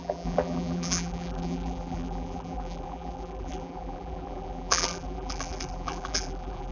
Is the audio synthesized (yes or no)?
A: yes